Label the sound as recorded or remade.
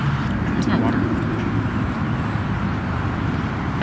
recorded